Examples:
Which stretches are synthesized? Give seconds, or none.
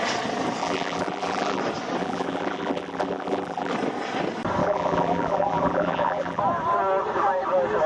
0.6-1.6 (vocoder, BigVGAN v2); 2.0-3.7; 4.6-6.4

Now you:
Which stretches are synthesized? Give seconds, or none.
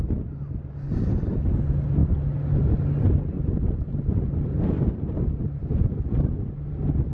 none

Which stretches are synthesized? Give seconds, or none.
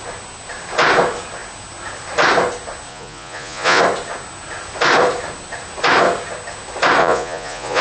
2.9-3.8 (vocoder, Vocos); 7.0-7.8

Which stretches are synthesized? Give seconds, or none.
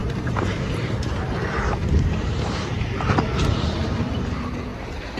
0.0-3.1 (vocoder, BigVGAN v2); 3.5-4.5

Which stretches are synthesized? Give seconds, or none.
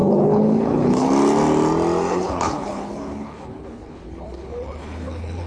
0.0-1.1 (codec, HILCodec); 2.1-5.5